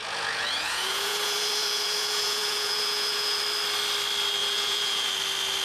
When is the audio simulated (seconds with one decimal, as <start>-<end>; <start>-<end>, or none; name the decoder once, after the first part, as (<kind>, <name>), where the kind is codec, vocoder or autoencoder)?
0.0-3.4 (vocoder, Vocos); 4.4-5.1